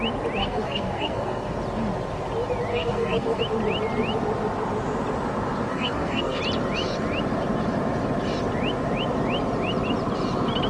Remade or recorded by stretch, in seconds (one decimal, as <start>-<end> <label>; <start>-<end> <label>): 0.0-0.4 recorded; 0.4-1.6 remade; 1.6-2.7 recorded; 2.7-3.4 remade; 3.4-5.7 recorded; 5.7-6.4 remade; 6.4-10.7 recorded